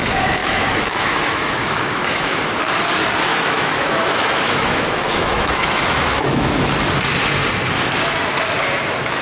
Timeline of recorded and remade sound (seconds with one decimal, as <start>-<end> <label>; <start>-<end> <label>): 0.0-0.4 recorded; 0.4-2.4 remade; 2.4-3.3 recorded; 3.3-6.5 remade; 6.5-9.2 recorded